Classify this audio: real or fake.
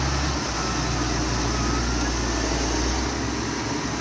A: real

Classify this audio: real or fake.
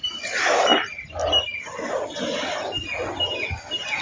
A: real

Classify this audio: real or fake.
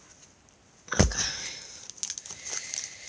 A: real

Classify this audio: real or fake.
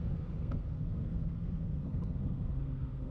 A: fake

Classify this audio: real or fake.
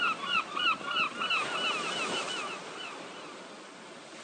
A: real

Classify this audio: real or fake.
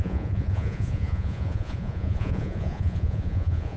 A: fake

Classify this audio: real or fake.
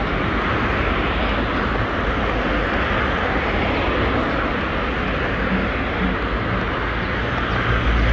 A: real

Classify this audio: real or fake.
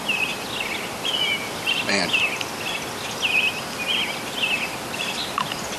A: real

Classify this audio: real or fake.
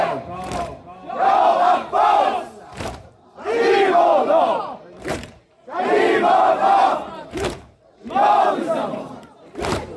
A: fake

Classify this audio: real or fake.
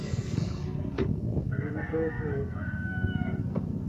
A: fake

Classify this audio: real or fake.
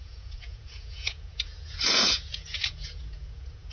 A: fake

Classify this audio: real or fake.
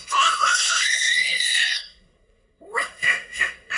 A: fake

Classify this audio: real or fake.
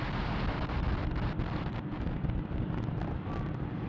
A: real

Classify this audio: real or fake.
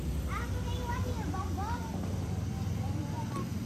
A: real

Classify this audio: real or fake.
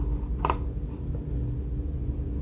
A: real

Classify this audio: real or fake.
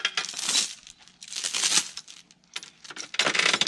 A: real